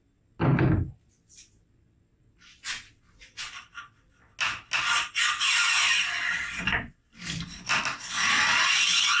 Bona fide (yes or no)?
yes